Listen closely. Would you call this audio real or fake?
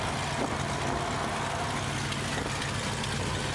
real